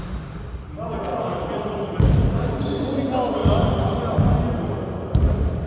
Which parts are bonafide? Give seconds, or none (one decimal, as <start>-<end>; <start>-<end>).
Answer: 0.0-5.7